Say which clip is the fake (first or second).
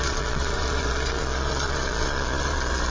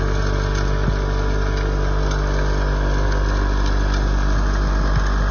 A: first